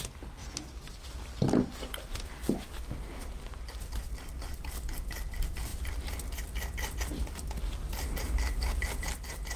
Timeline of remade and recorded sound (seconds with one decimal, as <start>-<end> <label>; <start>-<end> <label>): 0.0-9.6 recorded